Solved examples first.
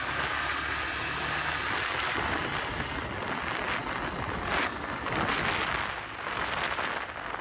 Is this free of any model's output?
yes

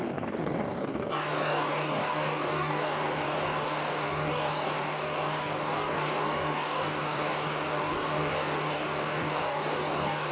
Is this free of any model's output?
no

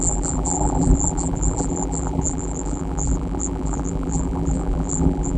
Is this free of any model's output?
no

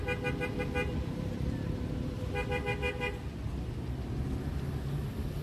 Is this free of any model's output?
yes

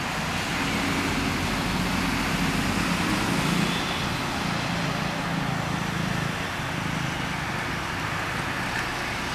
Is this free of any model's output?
yes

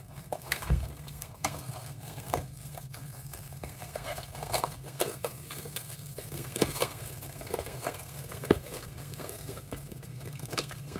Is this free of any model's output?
no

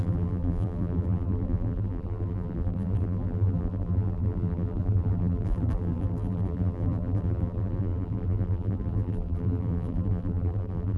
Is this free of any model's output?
no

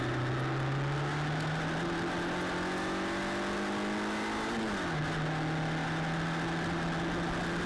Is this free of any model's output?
yes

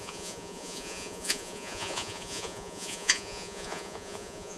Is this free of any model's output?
no